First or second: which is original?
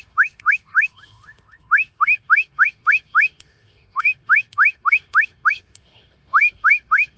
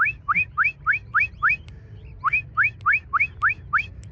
second